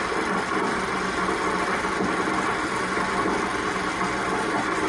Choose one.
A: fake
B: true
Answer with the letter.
B